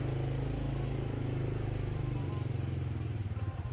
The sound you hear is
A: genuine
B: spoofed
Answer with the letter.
A